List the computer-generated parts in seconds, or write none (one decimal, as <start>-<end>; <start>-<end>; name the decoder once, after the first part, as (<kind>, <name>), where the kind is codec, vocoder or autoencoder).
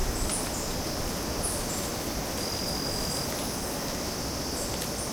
1.0-1.9 (vocoder, BigVGAN v2)